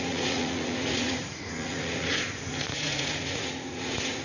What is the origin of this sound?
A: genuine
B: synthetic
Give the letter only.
B